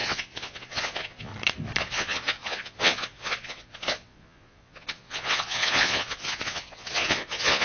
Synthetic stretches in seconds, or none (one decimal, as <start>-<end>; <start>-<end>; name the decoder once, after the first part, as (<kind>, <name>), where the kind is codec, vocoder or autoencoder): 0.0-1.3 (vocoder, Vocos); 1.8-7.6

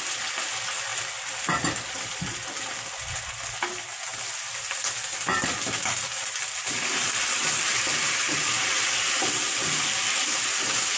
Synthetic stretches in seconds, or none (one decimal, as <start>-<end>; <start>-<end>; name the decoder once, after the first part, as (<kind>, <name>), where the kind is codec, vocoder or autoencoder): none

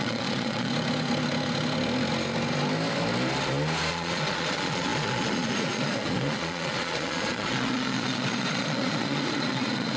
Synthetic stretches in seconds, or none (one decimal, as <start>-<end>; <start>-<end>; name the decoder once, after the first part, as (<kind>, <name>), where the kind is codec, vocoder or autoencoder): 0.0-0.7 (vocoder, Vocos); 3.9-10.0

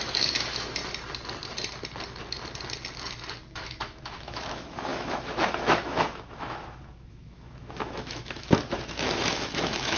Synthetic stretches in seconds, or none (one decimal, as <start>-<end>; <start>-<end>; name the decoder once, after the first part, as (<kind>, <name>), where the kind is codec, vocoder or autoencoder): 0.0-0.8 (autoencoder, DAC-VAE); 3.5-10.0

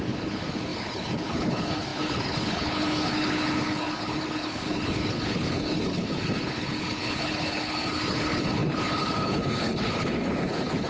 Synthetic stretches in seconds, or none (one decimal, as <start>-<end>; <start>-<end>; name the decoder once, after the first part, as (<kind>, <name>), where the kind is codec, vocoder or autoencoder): 0.0-10.9 (codec, HILCodec)

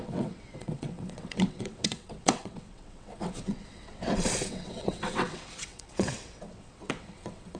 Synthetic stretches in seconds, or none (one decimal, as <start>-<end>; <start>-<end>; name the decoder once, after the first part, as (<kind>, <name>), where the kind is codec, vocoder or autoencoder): 0.0-7.6 (vocoder, WaveNeXt)

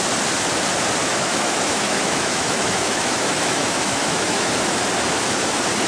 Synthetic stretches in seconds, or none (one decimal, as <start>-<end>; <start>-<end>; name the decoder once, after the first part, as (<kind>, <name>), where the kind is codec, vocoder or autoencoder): 1.0-4.5 (autoencoder, DAC-VAE)